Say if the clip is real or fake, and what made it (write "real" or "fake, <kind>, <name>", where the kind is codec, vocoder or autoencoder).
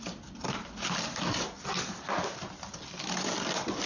fake, vocoder, BigVGAN v2